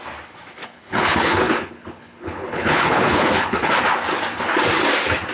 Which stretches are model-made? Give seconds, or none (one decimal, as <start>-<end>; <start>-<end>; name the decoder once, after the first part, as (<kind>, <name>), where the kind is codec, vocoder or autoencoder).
0.6-3.8 (codec, HILCodec)